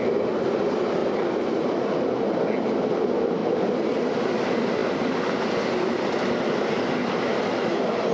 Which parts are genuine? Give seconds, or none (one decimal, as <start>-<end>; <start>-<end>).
0.0-1.0; 1.5-3.4; 4.0-8.1